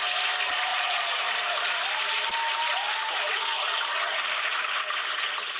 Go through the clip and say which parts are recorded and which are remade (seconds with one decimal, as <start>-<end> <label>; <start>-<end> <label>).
0.0-0.7 recorded; 0.7-1.2 remade; 1.2-5.6 recorded